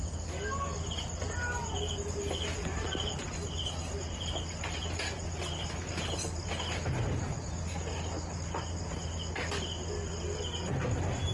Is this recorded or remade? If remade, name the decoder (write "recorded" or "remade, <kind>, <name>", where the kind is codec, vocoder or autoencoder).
recorded